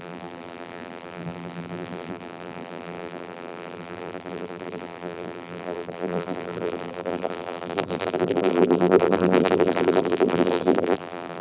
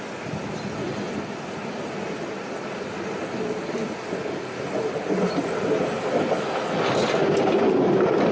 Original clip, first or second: second